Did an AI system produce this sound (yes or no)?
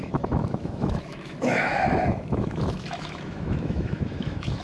yes